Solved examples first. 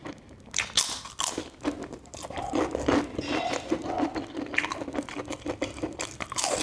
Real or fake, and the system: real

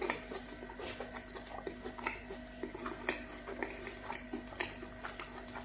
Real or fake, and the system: real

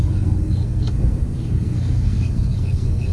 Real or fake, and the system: fake, codec, SNAC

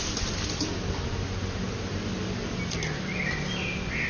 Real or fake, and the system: real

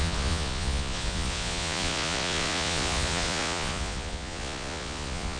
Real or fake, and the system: fake, vocoder, Vocos